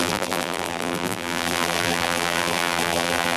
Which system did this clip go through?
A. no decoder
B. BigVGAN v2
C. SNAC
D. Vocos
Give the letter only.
B